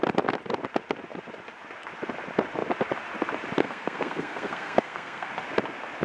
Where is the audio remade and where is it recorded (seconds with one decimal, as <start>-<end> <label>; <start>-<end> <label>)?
0.0-3.6 recorded; 3.6-5.3 remade; 5.3-6.0 recorded